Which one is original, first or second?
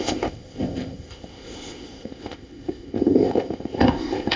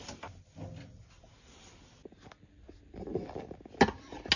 second